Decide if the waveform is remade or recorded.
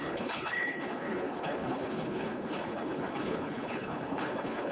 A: remade